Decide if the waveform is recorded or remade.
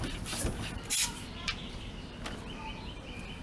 recorded